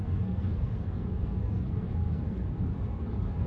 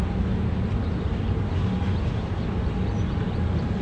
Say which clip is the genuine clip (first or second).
second